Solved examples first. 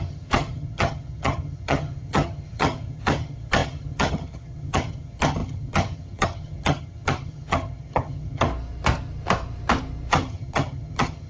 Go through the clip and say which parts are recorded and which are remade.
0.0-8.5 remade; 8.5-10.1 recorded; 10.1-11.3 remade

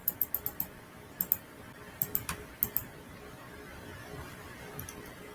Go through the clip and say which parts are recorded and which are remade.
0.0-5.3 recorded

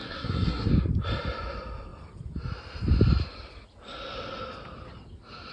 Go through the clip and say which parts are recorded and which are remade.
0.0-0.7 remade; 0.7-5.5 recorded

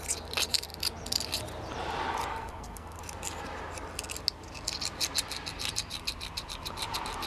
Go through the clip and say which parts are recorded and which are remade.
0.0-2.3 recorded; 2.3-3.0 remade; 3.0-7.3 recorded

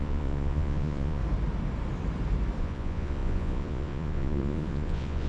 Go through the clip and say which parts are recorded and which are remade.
0.0-1.2 remade; 1.2-2.6 recorded; 2.6-5.3 remade

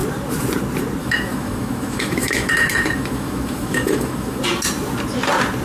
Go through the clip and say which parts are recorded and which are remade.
0.0-1.0 recorded; 1.0-4.4 remade; 4.4-5.6 recorded